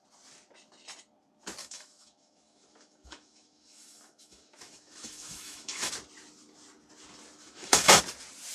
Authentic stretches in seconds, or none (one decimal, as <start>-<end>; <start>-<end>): 0.0-1.6; 5.9-7.4; 8.0-8.5